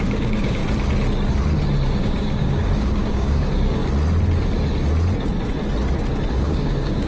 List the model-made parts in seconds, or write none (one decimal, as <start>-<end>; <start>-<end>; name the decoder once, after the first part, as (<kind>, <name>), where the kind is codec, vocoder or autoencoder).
0.0-0.6 (codec, DAC); 1.9-3.8; 6.3-7.1